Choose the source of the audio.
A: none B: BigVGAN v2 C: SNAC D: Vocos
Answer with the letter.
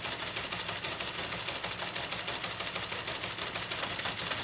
A